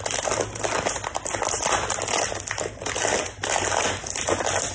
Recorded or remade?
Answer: recorded